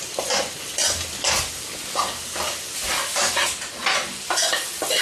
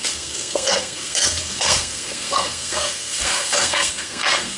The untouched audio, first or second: first